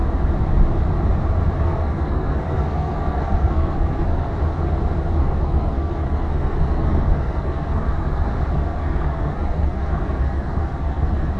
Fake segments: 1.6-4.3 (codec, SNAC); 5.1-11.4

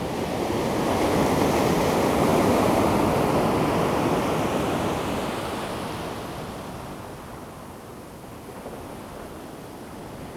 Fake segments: none

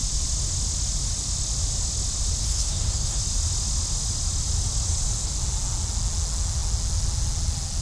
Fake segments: 2.4-3.2 (codec, SNAC)

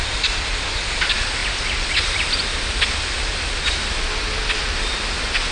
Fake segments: none

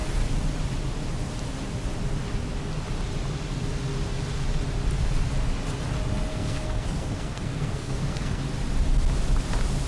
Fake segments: 6.3-8.4 (codec, SNAC)